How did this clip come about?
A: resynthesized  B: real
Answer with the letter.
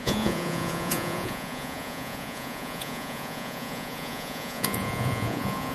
A